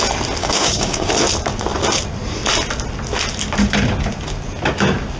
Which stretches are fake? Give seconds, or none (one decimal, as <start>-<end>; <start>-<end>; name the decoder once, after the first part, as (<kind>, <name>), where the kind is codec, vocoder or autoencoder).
0.4-1.1 (codec, DAC)